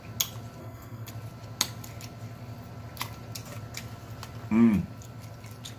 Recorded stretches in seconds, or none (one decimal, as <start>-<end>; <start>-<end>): 0.0-0.6; 1.1-5.8